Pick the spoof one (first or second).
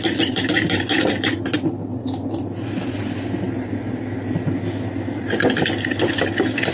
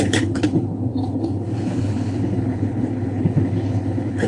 second